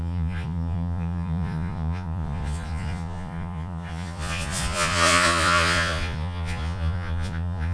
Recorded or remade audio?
remade